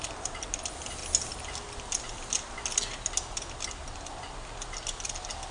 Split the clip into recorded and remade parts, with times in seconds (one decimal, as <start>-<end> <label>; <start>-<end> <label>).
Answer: 0.0-5.5 recorded